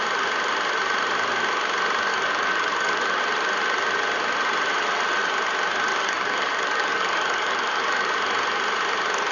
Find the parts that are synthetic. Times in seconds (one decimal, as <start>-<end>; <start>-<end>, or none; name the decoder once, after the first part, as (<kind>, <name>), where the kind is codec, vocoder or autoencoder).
2.1-3.2 (codec, DAC); 5.9-8.1